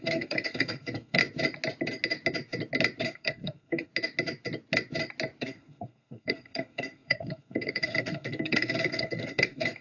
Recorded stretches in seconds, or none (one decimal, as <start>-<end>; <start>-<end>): 1.2-3.0; 3.9-5.4